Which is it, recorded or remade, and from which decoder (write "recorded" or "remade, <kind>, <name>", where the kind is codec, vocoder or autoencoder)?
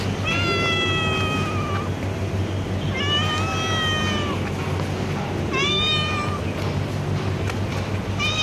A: recorded